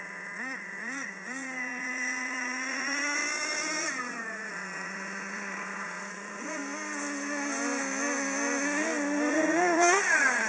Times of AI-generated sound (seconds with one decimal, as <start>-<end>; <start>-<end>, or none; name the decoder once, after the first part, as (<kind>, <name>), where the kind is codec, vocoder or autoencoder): 0.0-3.2 (vocoder, Vocos); 3.8-6.6; 9.3-10.5